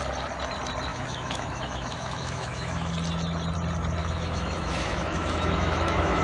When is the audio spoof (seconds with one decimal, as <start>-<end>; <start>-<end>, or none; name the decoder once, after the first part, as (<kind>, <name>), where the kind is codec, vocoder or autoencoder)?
0.9-2.9 (autoencoder, DAC-VAE); 4.0-6.2